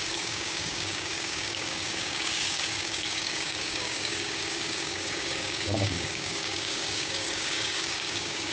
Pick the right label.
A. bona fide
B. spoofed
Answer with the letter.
B